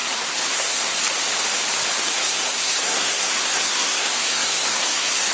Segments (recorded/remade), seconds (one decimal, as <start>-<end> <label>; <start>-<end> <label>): 0.0-1.0 remade; 1.0-2.2 recorded; 2.2-5.3 remade